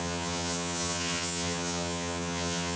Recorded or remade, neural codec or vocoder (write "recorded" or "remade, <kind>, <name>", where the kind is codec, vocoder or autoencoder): remade, vocoder, HiFi-GAN